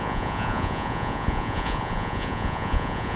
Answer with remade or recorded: remade